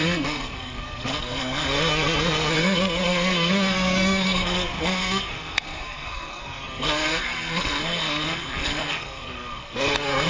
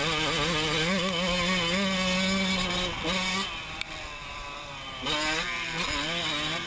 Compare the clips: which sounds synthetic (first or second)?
first